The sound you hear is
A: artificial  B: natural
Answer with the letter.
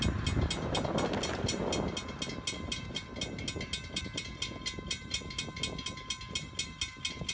B